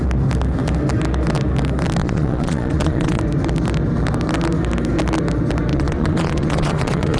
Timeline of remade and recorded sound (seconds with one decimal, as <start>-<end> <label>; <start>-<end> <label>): 0.0-2.0 recorded; 2.0-3.2 remade; 3.2-5.7 recorded; 5.7-7.2 remade